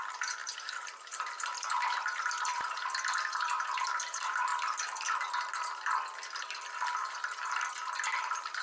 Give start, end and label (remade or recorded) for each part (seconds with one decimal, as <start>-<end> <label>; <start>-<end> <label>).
0.0-4.5 remade; 4.5-8.2 recorded; 8.2-8.6 remade